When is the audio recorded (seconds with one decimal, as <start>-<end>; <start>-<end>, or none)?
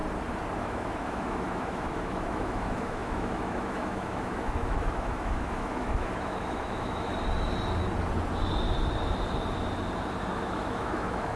0.0-0.6; 7.1-10.3